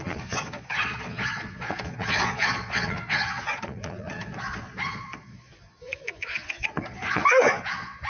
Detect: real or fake fake